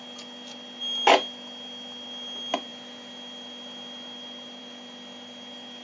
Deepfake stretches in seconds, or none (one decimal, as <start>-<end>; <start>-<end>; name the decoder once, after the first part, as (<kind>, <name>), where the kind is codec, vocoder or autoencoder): none